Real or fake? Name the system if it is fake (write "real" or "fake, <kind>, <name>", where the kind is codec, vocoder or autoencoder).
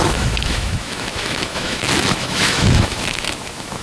fake, autoencoder, DAC-VAE